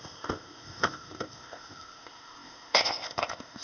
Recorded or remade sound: remade